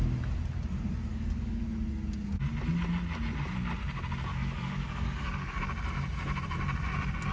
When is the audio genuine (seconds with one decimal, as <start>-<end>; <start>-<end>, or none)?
0.0-1.1; 1.6-4.3; 5.6-7.3

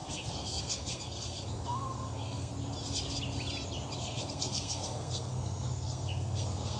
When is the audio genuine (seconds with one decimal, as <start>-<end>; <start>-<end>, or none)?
2.5-4.0

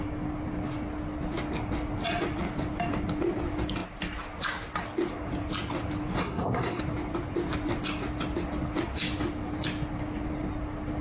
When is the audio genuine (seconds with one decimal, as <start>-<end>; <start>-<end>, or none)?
0.0-6.2; 6.8-11.0

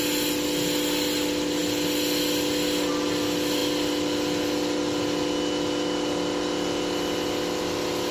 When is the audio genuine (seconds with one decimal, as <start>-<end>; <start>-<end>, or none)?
0.0-8.1

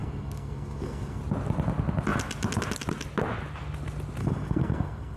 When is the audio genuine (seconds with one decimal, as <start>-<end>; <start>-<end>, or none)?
1.2-4.2

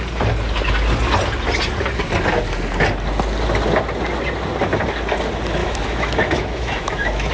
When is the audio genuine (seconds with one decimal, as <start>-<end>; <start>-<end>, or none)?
0.0-5.6

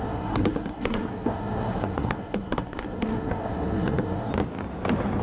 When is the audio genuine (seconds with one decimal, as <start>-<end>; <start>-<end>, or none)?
4.3-5.2

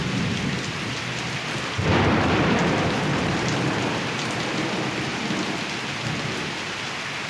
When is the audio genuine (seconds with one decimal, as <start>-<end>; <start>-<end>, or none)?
none